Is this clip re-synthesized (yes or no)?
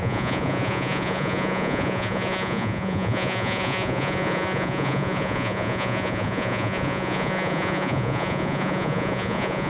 yes